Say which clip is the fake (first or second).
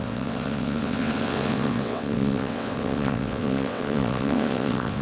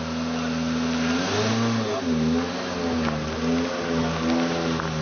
first